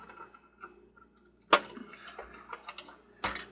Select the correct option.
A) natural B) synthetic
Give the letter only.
A